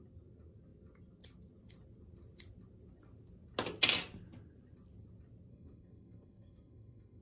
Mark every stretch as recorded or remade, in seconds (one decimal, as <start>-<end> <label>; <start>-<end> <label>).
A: 0.0-5.5 recorded; 5.5-7.2 remade